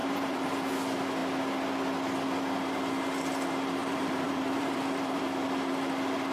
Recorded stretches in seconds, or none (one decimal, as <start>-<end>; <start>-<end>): 0.7-3.8; 5.2-6.3

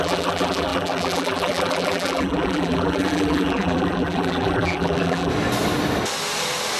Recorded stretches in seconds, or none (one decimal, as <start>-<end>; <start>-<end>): 5.3-6.8

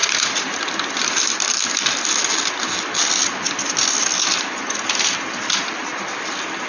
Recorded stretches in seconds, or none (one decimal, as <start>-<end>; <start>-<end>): 0.0-1.0

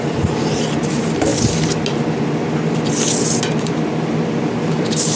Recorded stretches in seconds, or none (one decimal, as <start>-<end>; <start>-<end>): 1.3-4.4

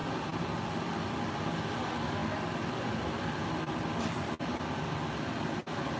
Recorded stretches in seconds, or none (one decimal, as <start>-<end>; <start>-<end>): 0.0-6.0

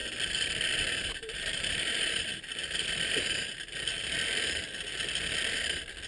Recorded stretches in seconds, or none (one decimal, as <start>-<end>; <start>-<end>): 0.0-1.1; 2.3-6.1

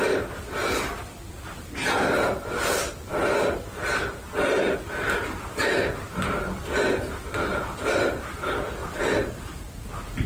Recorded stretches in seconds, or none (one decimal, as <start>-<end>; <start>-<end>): 0.0-8.8; 9.6-10.3

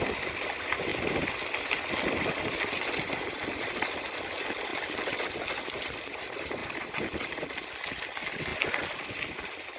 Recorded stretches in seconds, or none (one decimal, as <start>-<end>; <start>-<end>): 0.0-4.7; 5.3-8.5; 9.2-9.8